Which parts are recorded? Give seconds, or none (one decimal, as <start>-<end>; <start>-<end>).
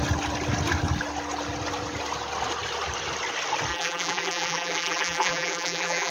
0.0-3.7